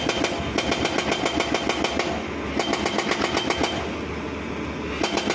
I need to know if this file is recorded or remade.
recorded